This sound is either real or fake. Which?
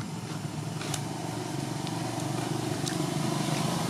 fake